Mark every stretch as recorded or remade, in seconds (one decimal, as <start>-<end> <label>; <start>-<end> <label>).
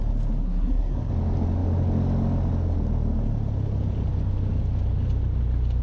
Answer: 0.0-0.4 recorded; 0.4-1.1 remade; 1.1-5.8 recorded